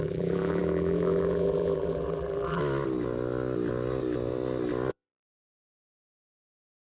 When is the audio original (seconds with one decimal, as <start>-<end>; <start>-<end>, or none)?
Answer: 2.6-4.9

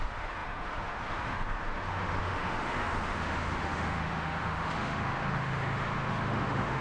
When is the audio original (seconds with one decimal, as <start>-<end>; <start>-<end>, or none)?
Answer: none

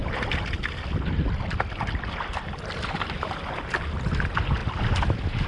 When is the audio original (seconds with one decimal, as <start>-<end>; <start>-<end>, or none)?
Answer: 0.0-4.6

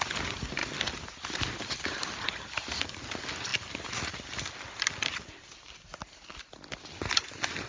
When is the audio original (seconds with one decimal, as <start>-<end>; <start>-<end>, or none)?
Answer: 0.0-7.7

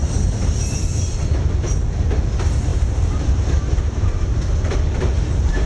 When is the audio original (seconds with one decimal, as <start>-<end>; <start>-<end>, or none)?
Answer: 0.0-2.3; 4.5-5.1

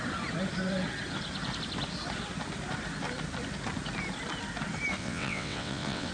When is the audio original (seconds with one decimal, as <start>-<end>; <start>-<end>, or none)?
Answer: 0.0-5.0

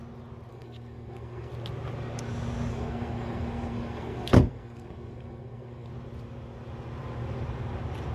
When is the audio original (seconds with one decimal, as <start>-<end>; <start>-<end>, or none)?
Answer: 0.0-0.5; 1.5-2.7; 5.9-8.1

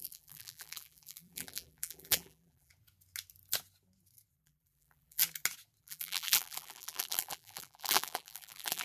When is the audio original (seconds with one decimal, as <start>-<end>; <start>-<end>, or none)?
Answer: 2.7-4.3; 5.2-5.8